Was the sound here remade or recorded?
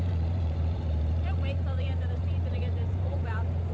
remade